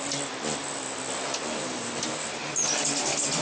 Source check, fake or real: real